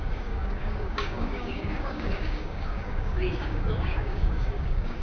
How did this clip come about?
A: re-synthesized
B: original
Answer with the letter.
A